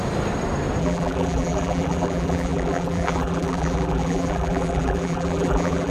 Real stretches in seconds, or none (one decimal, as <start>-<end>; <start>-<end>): 0.0-0.8